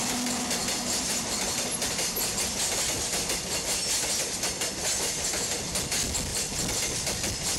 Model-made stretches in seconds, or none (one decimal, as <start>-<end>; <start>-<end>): 0.6-1.7; 6.3-6.8